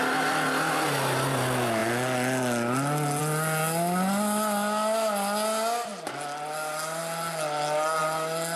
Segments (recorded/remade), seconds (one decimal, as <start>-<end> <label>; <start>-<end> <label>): 0.0-8.6 recorded